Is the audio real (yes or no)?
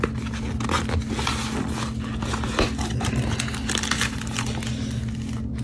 yes